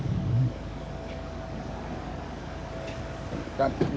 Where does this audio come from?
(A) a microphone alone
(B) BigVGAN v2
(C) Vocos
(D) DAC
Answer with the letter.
D